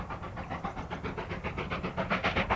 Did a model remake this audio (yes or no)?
no